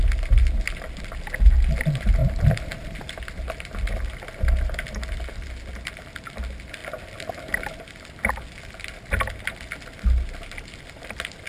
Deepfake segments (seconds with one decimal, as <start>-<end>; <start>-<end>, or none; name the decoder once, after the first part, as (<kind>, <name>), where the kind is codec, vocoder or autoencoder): 2.2-3.2 (vocoder, BigVGAN v2)